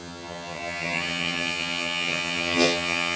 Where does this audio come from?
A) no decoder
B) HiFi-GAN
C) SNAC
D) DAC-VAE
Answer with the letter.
B